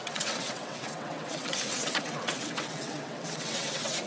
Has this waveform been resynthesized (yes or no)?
yes